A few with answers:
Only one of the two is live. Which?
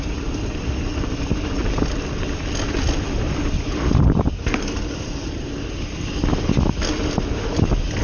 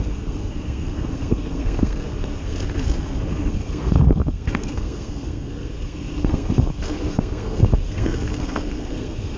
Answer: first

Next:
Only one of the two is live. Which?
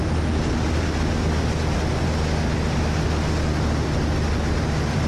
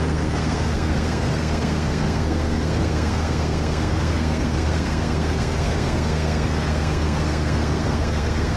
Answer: first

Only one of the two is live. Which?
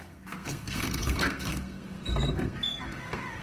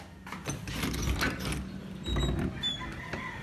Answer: second